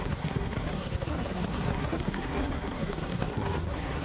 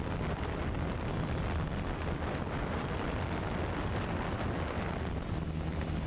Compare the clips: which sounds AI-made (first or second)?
first